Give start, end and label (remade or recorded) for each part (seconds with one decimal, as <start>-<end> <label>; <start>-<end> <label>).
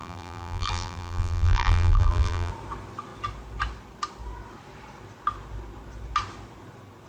0.0-2.5 remade; 2.5-7.1 recorded